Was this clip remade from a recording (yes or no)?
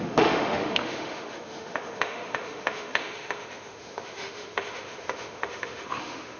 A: yes